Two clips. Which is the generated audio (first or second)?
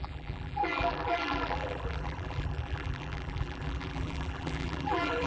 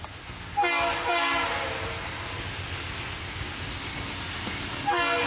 first